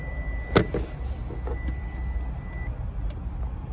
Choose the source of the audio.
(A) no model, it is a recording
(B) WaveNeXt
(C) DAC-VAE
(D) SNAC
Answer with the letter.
A